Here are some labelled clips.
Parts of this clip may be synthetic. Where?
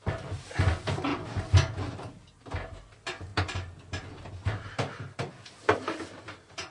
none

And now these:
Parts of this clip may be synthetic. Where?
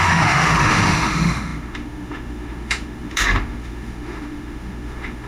0.0-5.3 (autoencoder, DAC-VAE)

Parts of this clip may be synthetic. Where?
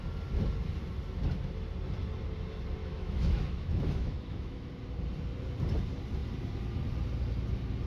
2.8-4.7 (autoencoder, DAC-VAE)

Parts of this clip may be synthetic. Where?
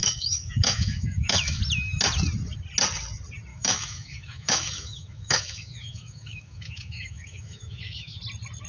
0.0-1.6 (autoencoder, DAC-VAE); 3.5-8.2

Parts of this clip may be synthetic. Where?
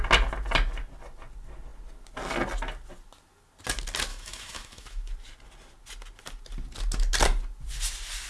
4.1-5.1 (autoencoder, DAC-VAE)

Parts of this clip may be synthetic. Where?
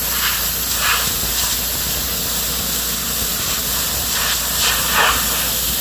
none